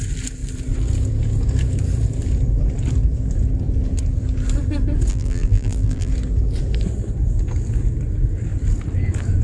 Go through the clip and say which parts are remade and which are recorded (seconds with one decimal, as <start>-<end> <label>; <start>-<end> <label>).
0.0-5.1 recorded; 5.1-6.1 remade; 6.1-9.4 recorded